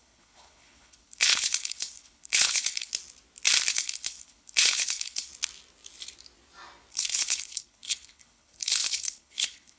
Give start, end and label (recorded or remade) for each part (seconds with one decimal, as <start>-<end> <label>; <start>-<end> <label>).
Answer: 0.0-2.9 remade; 2.9-3.7 recorded; 3.7-5.3 remade; 5.3-6.9 recorded; 6.9-9.8 remade